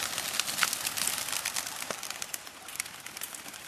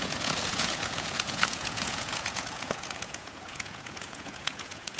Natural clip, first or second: first